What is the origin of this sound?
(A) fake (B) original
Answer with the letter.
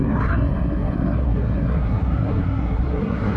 A